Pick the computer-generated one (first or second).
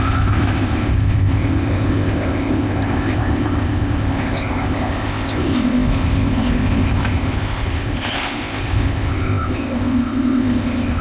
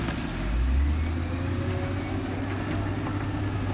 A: first